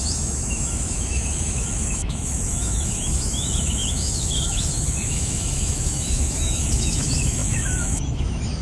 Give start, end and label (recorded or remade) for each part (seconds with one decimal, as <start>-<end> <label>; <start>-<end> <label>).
0.0-8.6 remade